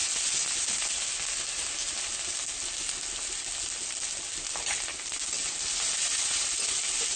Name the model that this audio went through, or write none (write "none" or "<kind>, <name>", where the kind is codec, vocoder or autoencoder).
none